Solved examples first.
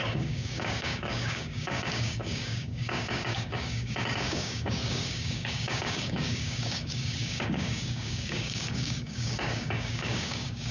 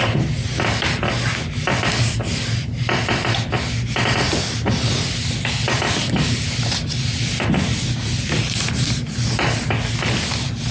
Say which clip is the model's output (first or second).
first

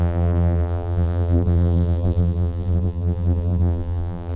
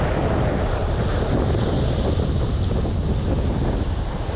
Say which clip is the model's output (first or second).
first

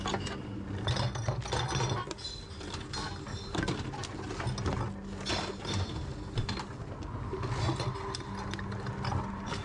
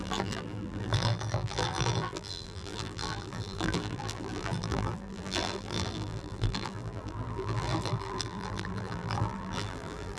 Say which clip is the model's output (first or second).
second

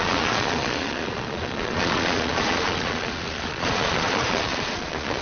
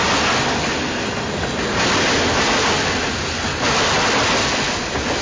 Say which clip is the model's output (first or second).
first